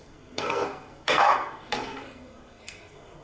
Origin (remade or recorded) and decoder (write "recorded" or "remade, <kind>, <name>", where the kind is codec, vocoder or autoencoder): remade, codec, SNAC